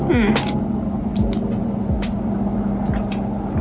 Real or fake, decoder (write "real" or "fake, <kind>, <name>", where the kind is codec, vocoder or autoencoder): real